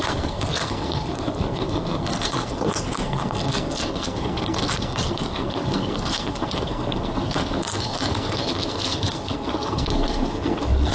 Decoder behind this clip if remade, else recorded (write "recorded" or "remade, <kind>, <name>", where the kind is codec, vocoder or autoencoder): remade, codec, SNAC